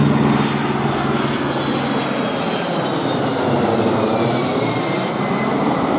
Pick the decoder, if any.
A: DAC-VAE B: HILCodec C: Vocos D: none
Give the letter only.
D